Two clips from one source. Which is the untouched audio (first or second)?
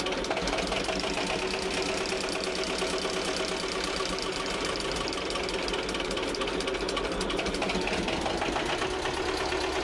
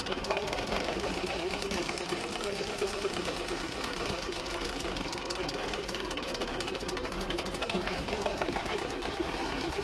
first